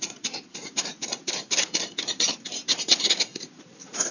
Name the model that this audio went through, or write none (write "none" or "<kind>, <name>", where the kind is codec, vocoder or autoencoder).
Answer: vocoder, BigVGAN v2